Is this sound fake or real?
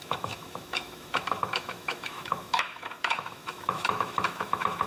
fake